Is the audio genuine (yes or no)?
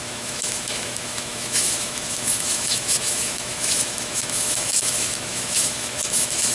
no